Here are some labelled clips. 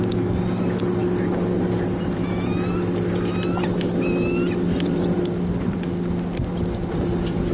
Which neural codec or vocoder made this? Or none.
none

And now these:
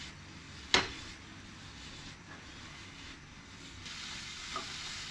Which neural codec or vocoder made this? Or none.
none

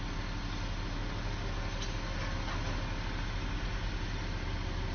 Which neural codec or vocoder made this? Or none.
none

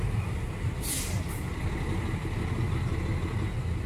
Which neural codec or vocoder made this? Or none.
none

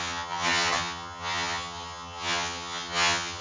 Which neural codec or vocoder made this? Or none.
vocoder, HiFi-GAN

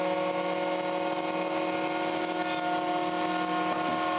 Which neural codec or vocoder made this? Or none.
none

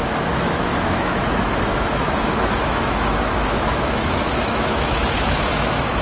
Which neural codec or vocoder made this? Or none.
autoencoder, DAC-VAE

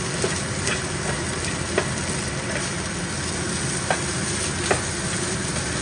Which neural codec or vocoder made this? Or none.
none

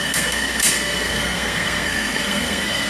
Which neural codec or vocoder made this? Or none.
codec, SNAC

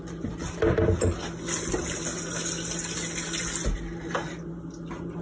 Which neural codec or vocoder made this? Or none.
none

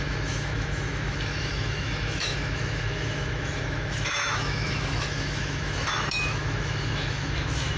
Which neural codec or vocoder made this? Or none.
autoencoder, DAC-VAE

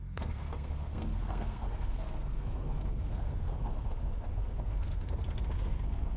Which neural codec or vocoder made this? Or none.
codec, SNAC